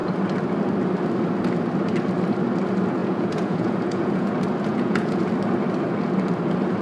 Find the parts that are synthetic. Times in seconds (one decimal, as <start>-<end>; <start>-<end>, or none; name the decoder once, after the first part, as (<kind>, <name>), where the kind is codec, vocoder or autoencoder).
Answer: 3.0-4.3 (vocoder, Vocos); 4.7-5.3